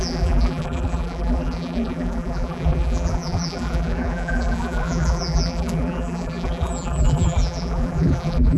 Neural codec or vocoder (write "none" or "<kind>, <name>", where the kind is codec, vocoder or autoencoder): vocoder, BigVGAN v2